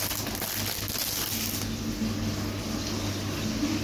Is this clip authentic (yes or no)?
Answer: yes